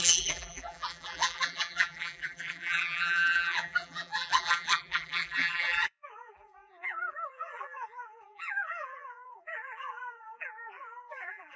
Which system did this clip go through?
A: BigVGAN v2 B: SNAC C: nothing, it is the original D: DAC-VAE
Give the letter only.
A